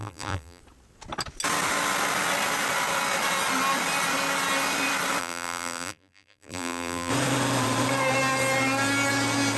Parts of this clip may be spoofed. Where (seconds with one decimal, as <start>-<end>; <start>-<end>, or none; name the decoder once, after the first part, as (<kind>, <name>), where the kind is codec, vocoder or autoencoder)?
0.0-0.6 (vocoder, BigVGAN v2); 5.2-7.1